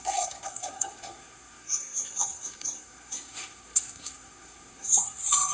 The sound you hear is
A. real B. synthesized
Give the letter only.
B